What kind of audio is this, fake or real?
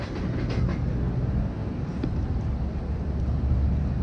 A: real